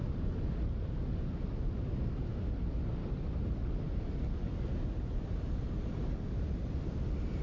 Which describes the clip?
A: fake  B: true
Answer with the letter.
B